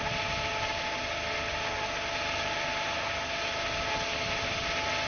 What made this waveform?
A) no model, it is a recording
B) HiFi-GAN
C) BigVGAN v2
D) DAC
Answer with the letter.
A